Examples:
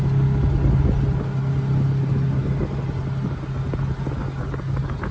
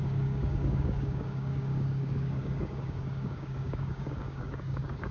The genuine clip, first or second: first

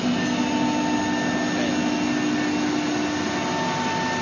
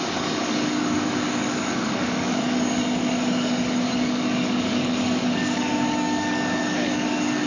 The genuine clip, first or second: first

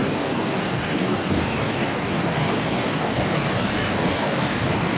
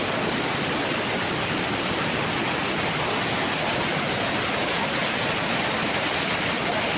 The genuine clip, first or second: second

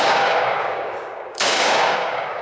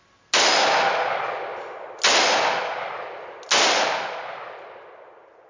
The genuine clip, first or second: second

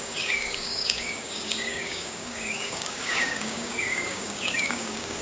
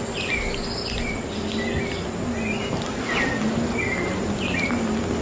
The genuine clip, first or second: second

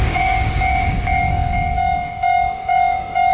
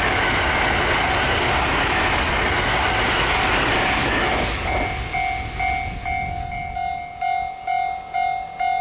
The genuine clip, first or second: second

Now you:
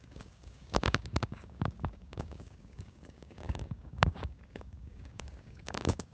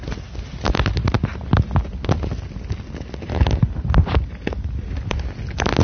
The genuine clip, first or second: second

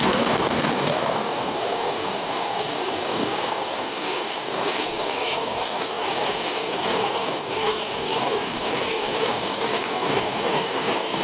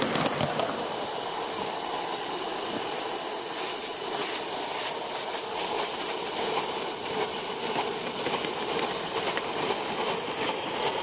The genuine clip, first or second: second